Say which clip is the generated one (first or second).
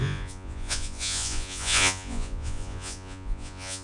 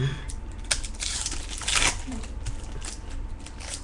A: first